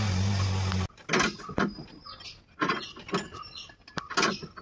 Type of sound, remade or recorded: recorded